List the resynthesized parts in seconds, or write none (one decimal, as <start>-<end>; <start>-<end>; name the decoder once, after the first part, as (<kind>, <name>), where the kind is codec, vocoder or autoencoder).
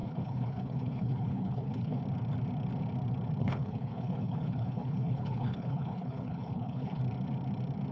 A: 0.0-2.0 (codec, HILCodec); 3.4-7.0